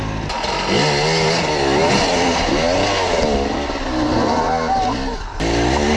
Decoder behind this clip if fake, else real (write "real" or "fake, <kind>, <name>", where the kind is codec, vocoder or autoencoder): real